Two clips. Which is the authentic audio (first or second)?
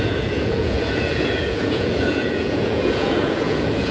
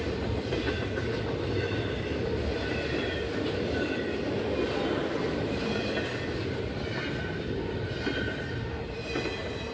second